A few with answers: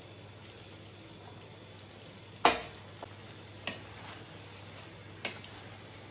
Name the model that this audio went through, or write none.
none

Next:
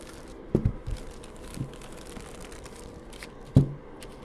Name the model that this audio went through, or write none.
none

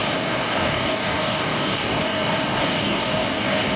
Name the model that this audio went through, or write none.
codec, DAC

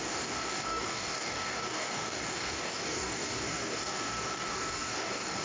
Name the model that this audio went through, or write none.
codec, DAC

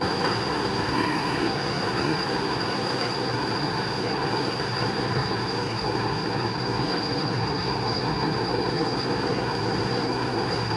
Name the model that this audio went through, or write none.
codec, SNAC